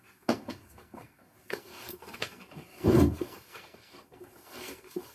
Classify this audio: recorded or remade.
remade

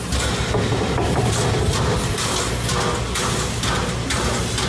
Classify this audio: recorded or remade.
recorded